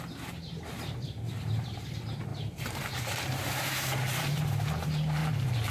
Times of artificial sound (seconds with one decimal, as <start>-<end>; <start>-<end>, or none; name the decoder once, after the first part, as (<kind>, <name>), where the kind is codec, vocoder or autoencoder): 0.0-5.2 (vocoder, BigVGAN v2)